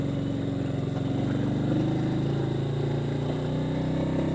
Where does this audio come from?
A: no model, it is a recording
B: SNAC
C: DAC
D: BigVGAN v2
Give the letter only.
A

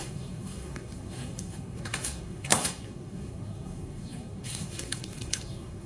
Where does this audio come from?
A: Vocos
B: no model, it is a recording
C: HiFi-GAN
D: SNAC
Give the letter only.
D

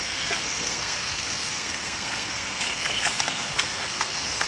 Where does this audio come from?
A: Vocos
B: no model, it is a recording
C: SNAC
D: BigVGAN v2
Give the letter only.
C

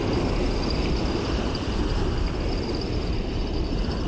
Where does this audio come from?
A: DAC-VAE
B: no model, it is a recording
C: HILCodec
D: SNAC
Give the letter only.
B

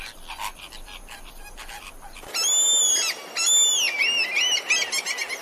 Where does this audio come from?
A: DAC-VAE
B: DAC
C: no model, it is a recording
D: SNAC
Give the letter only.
C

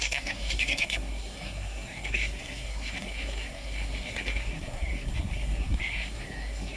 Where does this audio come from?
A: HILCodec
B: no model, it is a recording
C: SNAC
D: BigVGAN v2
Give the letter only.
C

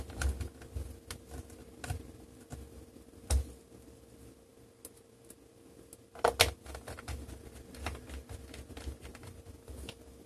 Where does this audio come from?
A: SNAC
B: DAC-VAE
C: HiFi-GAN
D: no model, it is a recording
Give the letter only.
D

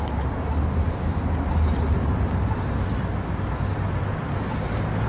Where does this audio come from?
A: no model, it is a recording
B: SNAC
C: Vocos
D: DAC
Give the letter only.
A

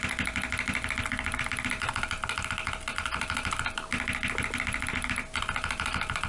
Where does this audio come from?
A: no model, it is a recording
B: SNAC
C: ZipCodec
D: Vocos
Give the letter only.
A